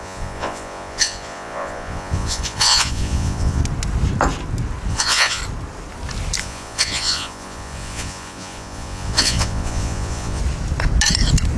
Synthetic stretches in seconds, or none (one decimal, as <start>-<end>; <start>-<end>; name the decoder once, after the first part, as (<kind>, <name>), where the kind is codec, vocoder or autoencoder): 0.0-3.6 (vocoder, Vocos); 4.9-5.4; 6.4-10.4